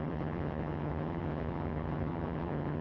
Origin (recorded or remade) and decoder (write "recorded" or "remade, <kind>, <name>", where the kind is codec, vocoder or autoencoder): remade, vocoder, HiFi-GAN